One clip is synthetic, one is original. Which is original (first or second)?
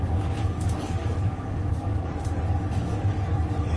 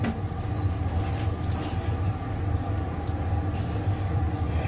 second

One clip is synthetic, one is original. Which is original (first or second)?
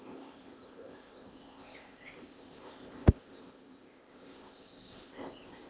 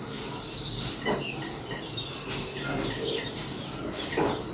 second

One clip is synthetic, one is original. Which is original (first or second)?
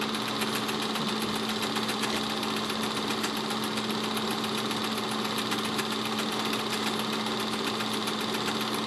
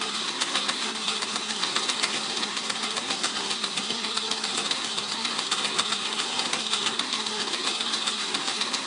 first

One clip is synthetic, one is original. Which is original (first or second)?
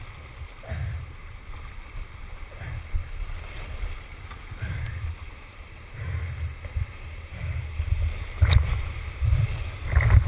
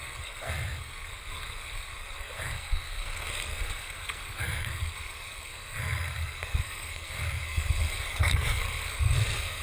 first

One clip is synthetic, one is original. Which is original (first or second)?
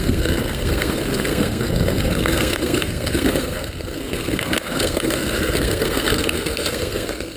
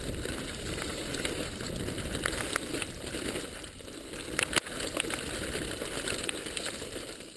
second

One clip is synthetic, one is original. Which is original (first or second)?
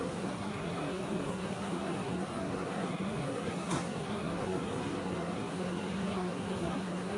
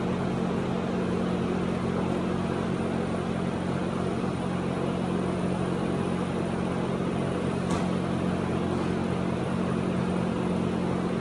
second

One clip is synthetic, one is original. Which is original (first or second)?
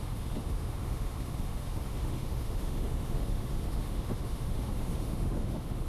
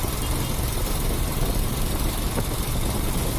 second